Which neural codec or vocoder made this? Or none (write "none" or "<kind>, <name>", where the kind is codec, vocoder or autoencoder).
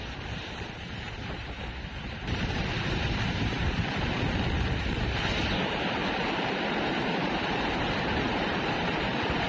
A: vocoder, BigVGAN v2